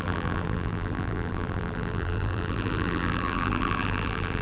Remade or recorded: remade